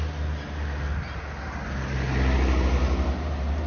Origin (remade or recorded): recorded